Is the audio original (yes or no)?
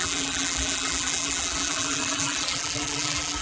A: no